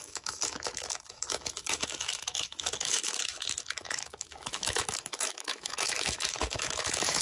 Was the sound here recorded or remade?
remade